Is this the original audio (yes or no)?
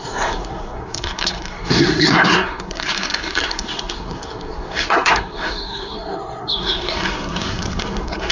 no